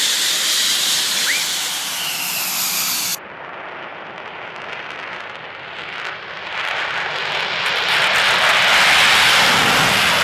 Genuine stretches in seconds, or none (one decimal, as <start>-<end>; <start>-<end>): 0.0-10.2